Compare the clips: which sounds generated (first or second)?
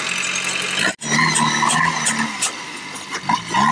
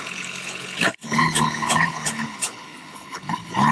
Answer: second